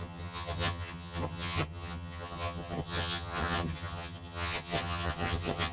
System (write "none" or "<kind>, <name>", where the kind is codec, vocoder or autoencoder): vocoder, HiFi-GAN